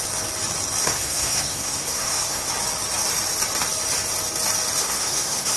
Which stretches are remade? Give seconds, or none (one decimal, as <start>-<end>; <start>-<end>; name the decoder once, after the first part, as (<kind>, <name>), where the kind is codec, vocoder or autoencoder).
0.8-2.5 (codec, SNAC); 4.8-5.6